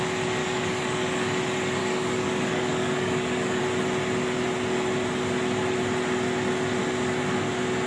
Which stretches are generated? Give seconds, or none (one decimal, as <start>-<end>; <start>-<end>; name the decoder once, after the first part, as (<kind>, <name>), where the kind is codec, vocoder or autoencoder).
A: 0.4-1.4 (codec, DAC); 1.8-3.6